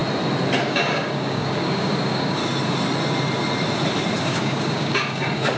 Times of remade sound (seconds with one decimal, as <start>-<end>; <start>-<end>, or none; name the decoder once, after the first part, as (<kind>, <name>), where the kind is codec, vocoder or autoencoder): 0.6-2.4 (codec, DAC); 4.2-5.6